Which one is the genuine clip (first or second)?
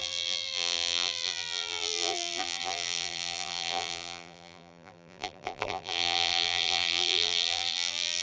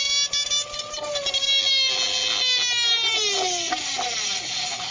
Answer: second